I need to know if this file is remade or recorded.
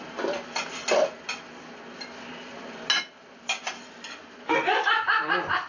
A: recorded